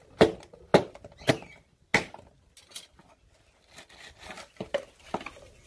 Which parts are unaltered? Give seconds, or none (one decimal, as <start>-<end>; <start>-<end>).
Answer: 0.0-5.7